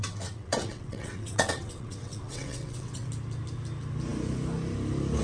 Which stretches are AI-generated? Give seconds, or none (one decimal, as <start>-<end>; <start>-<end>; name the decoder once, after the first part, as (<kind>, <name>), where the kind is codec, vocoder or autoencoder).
0.0-3.1 (vocoder, WaveNeXt)